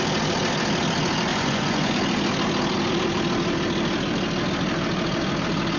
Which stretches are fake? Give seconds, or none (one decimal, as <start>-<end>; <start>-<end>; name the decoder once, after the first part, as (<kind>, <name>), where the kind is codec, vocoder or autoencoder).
1.3-1.9 (vocoder, Vocos)